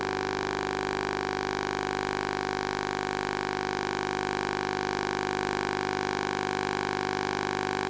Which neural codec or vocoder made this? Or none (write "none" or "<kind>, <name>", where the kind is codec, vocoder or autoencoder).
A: none